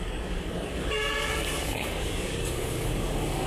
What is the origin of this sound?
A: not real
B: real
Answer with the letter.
A